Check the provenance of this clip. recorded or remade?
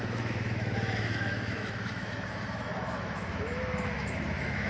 remade